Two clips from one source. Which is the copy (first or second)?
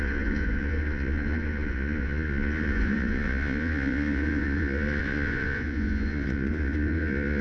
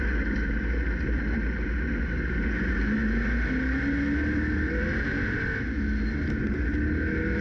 first